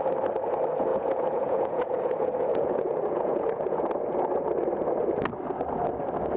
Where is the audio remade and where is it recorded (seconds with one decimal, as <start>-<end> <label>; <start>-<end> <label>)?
0.0-0.9 recorded; 0.9-3.9 remade; 3.9-6.4 recorded